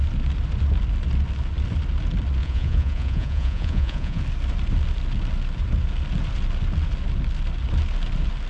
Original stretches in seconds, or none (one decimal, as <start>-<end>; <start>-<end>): 0.0-2.4; 4.2-8.5

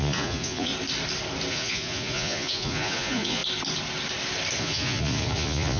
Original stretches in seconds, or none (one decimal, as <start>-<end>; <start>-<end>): 0.7-1.5; 3.4-4.6

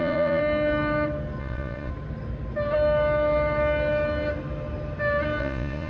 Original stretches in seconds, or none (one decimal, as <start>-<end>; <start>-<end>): 0.4-1.4; 1.9-5.4

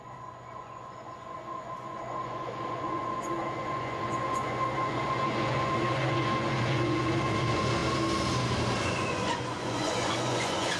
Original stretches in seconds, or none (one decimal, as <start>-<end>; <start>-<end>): 7.8-8.8

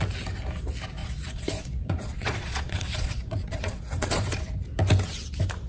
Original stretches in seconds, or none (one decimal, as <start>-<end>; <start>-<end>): 0.0-1.0; 4.4-5.7

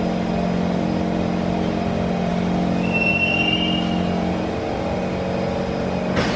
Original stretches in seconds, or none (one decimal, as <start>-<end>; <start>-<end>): 0.0-6.4

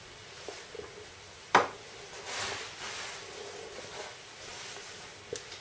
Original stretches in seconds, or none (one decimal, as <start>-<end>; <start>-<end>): 0.0-5.6

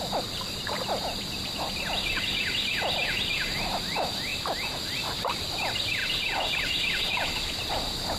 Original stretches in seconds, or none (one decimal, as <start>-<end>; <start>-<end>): 0.0-8.2